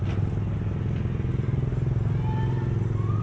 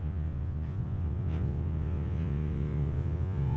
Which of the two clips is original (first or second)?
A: first